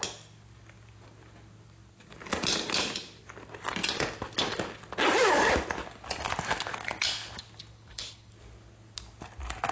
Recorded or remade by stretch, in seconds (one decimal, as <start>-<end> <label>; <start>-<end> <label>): 0.0-7.7 recorded; 7.7-8.3 remade; 8.3-9.7 recorded

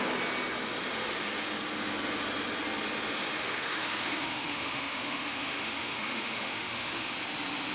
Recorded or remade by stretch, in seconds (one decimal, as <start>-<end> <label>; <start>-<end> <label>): 0.0-3.2 recorded; 3.2-7.1 remade; 7.1-7.7 recorded

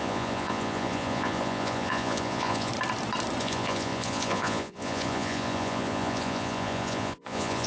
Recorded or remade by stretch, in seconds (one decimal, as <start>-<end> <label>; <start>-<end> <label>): 0.0-2.7 remade; 2.7-3.4 recorded; 3.4-7.7 remade

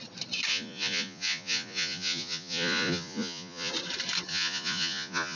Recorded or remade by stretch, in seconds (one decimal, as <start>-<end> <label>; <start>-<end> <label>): 0.0-0.5 recorded; 0.5-3.7 remade; 3.7-4.3 recorded; 4.3-5.4 remade

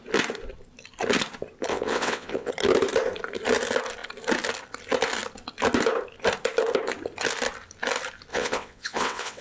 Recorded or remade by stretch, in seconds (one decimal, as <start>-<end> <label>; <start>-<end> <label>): 0.0-1.7 recorded; 1.7-2.5 remade; 2.5-8.3 recorded; 8.3-9.4 remade

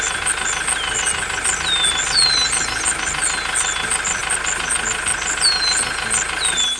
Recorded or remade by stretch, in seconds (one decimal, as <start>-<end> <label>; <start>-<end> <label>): 0.0-6.8 recorded